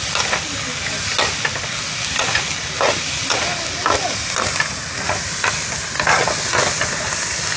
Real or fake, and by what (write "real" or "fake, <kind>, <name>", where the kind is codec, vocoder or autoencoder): real